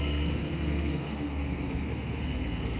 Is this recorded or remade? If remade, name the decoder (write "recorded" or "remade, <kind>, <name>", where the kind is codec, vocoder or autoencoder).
remade, codec, SNAC